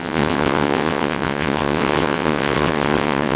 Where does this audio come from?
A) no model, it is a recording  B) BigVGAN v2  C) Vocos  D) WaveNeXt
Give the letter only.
D